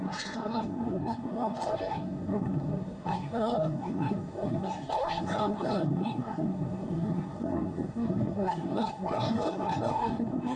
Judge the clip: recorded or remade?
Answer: remade